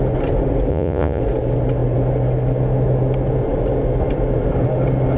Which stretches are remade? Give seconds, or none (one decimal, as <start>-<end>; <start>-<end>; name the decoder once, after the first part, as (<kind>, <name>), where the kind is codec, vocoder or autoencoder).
0.7-1.2 (vocoder, Vocos)